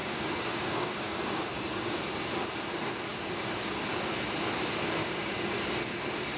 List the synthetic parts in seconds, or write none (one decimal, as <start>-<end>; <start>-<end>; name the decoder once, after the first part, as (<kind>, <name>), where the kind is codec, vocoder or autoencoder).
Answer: 0.0-2.0 (codec, DAC); 3.1-3.8; 5.0-5.6